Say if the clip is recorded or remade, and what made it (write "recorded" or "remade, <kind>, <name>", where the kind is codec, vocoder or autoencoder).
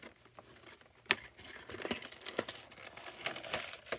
recorded